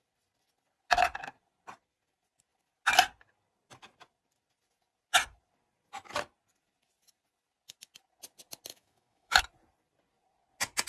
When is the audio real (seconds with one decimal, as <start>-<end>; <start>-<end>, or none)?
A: 0.0-8.7; 9.4-10.9